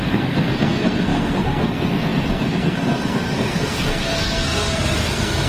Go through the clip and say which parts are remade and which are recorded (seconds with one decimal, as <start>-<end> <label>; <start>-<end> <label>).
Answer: 0.0-5.5 remade